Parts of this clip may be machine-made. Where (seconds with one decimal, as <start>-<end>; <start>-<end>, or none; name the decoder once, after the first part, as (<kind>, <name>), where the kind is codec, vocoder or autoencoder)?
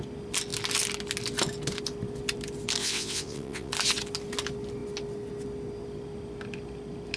2.8-3.7 (vocoder, WaveNeXt)